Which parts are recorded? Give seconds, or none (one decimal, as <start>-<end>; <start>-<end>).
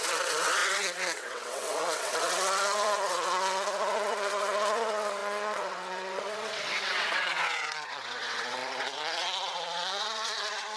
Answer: none